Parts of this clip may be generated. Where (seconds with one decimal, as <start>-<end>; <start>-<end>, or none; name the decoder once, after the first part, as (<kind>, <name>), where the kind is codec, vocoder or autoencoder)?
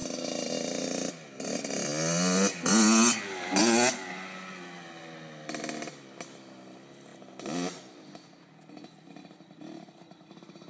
none